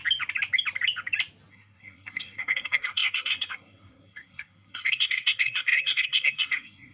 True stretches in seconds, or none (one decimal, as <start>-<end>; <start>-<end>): 0.0-1.5